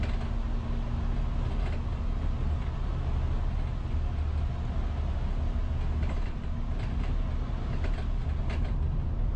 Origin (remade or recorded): recorded